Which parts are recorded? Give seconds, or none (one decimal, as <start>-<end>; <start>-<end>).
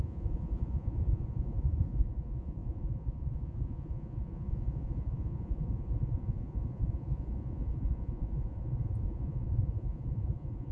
none